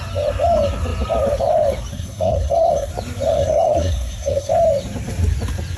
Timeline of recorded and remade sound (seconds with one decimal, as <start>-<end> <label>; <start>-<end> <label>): 0.0-1.9 recorded; 1.9-2.9 remade; 2.9-3.3 recorded; 3.3-4.5 remade; 4.5-5.8 recorded